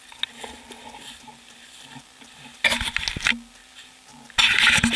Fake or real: real